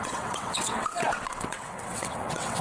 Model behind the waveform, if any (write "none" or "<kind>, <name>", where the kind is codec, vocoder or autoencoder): vocoder, WaveNeXt